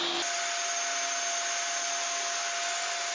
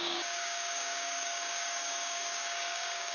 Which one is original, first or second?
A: first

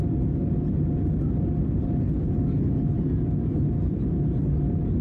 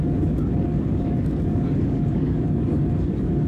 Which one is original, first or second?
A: first